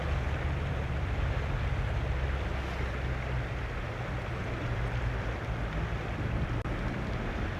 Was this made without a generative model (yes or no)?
yes